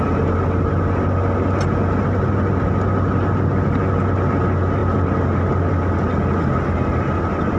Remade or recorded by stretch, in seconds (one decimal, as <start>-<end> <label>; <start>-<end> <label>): 0.0-7.6 recorded